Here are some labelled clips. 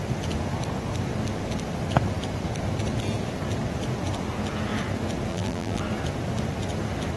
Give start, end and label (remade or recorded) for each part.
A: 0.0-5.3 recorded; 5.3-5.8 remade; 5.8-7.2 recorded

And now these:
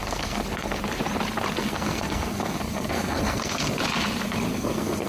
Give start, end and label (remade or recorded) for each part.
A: 0.0-0.8 remade; 0.8-1.6 recorded; 1.6-3.8 remade; 3.8-4.5 recorded; 4.5-5.1 remade